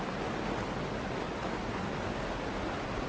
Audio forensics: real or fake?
real